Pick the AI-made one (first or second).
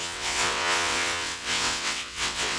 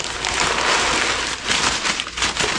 first